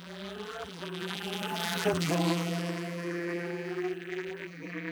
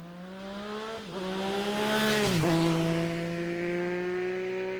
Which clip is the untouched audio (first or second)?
second